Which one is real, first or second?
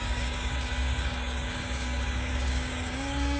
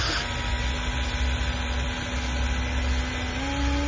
second